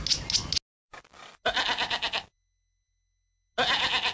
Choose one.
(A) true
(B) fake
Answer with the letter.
A